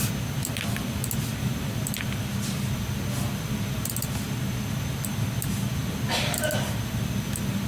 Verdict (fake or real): real